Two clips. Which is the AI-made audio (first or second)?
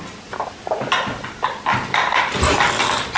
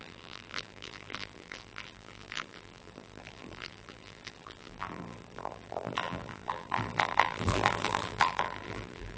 second